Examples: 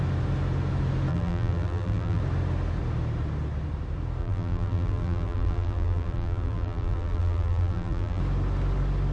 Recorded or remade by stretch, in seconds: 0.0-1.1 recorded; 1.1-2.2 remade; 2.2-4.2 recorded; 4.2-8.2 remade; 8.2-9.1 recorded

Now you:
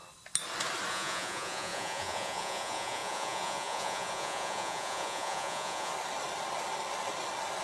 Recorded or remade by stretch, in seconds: 0.0-0.9 recorded; 0.9-5.9 remade; 5.9-7.6 recorded

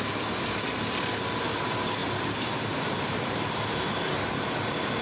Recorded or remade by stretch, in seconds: 0.0-2.0 recorded; 2.0-5.0 remade

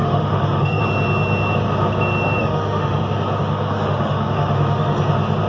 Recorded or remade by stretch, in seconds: 0.0-0.8 remade; 0.8-2.4 recorded; 2.4-3.0 remade; 3.0-3.4 recorded; 3.4-5.0 remade; 5.0-5.5 recorded